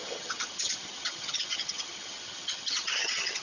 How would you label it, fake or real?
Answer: fake